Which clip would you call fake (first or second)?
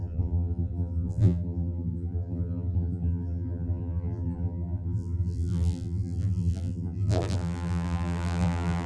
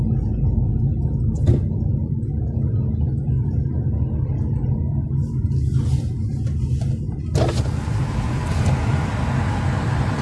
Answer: first